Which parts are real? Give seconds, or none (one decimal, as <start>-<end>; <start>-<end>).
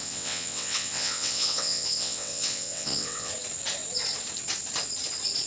3.3-5.5